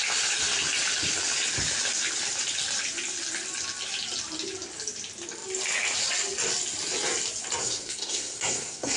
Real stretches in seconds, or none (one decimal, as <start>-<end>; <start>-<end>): 0.0-7.6